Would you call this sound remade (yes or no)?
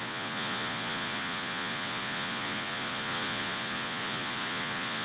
yes